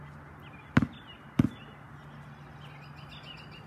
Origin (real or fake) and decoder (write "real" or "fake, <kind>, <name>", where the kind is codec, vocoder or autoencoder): real